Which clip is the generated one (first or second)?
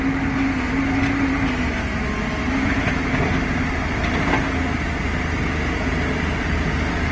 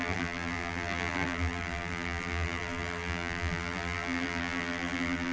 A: second